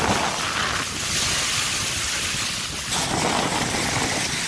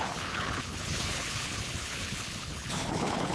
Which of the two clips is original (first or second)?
first